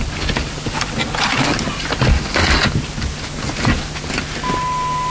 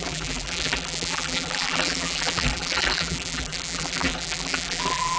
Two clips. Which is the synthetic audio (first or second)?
second